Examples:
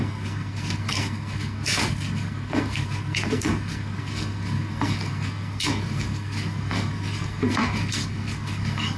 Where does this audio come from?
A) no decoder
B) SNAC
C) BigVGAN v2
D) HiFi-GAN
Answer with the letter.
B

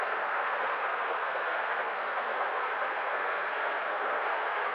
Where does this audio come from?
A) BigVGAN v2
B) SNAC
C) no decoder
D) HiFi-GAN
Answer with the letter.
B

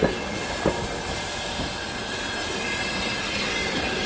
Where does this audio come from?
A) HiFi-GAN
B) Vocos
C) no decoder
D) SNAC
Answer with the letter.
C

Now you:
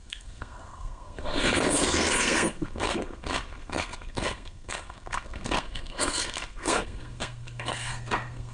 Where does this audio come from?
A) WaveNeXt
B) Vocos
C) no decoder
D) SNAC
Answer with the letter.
D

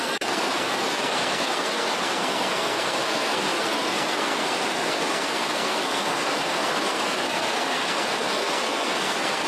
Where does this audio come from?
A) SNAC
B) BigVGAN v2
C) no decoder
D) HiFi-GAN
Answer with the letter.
A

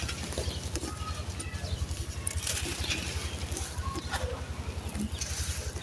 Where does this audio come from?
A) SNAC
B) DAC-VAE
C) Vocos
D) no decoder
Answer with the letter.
D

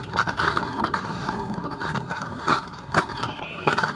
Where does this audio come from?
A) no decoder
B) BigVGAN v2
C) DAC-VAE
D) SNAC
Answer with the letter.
D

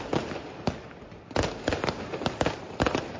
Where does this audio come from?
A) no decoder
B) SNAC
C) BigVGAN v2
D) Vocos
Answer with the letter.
A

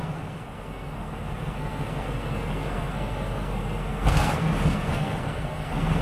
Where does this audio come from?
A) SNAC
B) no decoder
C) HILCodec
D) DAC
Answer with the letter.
A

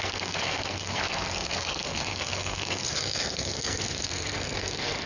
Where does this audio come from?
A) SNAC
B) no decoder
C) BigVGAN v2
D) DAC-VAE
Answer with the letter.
A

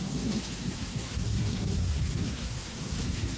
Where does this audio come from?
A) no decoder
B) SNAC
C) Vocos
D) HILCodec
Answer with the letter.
B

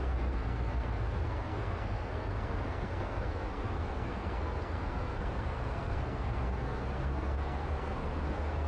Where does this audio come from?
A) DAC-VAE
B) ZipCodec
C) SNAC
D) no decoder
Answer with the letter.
C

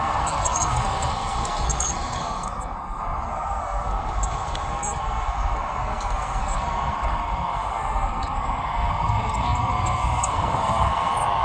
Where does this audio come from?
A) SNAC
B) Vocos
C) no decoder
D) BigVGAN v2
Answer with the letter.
A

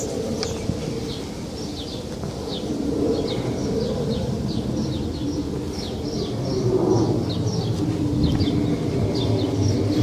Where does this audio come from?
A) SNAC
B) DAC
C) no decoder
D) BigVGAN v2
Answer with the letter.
C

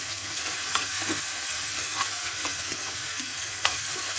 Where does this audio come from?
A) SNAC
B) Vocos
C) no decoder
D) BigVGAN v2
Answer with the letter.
A